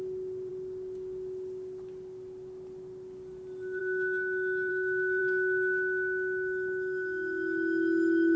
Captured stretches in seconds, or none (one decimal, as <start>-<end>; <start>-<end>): 0.0-4.7; 5.2-8.4